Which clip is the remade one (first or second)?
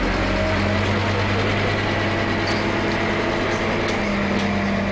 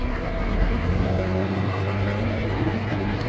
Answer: second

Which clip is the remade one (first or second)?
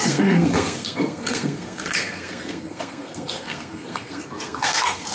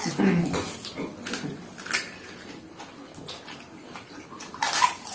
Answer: first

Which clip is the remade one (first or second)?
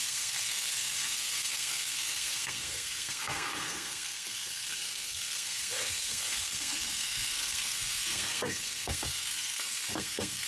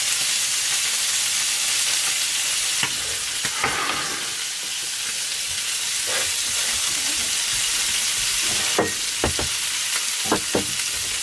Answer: first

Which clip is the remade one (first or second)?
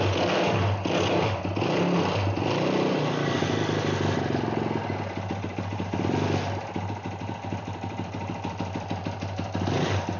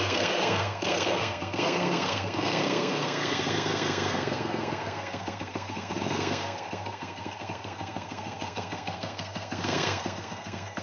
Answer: second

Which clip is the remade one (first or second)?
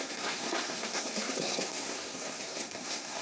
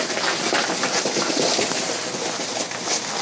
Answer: first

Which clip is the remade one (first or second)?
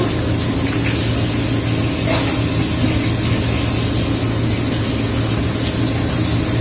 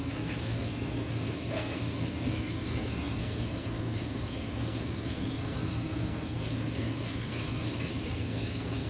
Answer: second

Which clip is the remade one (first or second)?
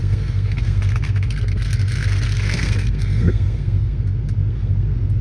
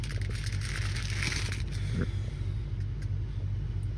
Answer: first